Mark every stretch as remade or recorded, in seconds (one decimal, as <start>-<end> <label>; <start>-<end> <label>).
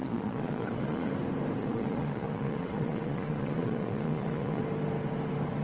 0.0-1.1 remade; 1.1-1.6 recorded; 1.6-4.6 remade; 4.6-5.6 recorded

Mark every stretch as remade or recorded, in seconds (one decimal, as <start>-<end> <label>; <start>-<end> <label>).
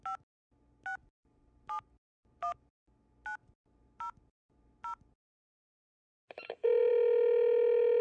0.0-1.0 recorded; 1.0-2.7 remade; 2.7-3.4 recorded; 3.4-6.9 remade; 6.9-8.0 recorded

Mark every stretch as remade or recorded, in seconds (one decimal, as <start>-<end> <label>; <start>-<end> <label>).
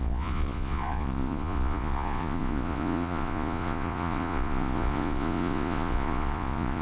0.0-6.8 remade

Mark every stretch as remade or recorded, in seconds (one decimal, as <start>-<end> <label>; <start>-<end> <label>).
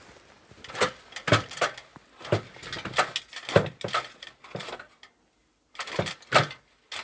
0.0-7.0 recorded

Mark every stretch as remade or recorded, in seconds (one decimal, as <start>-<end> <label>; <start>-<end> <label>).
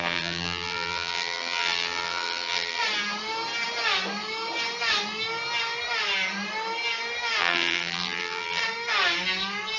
0.0-2.8 remade; 2.8-7.4 recorded; 7.4-8.6 remade; 8.6-9.8 recorded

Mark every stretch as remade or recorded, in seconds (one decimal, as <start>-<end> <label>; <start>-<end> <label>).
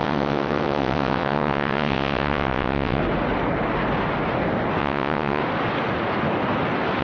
0.0-3.0 remade; 3.0-4.8 recorded; 4.8-5.4 remade; 5.4-7.0 recorded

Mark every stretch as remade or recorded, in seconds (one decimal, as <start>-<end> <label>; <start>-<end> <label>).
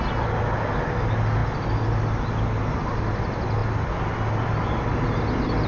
0.0-5.7 recorded